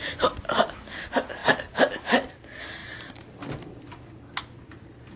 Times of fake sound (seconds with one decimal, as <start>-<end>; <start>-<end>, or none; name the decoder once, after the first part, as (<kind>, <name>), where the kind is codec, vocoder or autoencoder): none